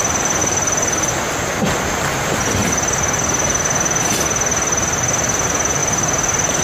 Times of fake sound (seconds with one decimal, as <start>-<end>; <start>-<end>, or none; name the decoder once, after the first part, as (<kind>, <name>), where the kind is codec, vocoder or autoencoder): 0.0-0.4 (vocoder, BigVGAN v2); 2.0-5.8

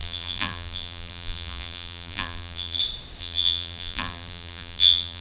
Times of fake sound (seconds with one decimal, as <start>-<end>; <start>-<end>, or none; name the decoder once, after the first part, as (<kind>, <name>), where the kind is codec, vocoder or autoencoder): 0.0-2.8 (vocoder, BigVGAN v2); 3.2-5.2

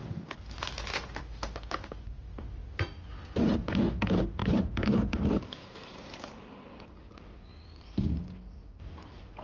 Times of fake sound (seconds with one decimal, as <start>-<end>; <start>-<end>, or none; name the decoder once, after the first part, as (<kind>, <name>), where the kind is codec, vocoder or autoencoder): 4.4-5.9 (vocoder, BigVGAN v2); 7.5-8.8

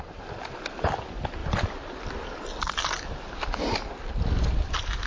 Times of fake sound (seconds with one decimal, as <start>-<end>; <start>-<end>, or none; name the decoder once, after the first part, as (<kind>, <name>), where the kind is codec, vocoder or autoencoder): none